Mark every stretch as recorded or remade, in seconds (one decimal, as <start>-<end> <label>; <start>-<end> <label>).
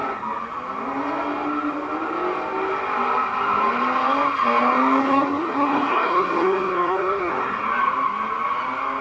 0.0-5.0 recorded; 5.0-7.3 remade; 7.3-9.0 recorded